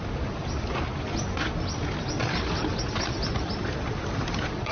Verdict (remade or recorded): recorded